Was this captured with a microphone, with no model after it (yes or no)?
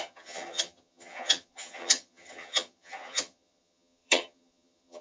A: no